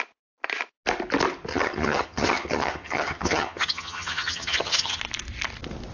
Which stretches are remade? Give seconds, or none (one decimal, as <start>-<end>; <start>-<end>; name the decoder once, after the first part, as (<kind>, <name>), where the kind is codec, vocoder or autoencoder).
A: 1.5-5.0 (vocoder, HiFi-GAN)